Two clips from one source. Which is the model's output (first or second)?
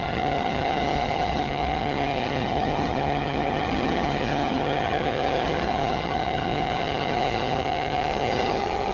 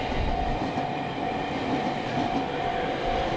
first